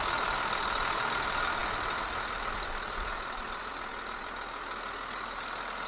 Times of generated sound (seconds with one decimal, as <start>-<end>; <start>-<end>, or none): none